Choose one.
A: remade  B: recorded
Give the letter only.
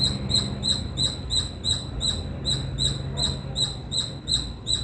B